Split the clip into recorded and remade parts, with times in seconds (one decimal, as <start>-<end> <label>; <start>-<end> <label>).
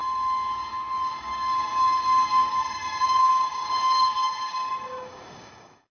0.0-1.1 recorded; 1.1-5.9 remade